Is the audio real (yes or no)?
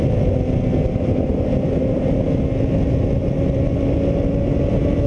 yes